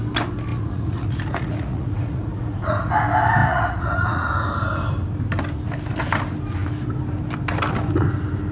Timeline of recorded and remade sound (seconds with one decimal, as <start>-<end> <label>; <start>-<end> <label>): 0.0-0.5 recorded; 0.5-2.9 remade; 2.9-3.4 recorded; 3.4-4.3 remade; 4.3-8.5 recorded